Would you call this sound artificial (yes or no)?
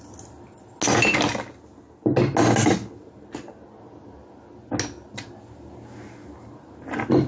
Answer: no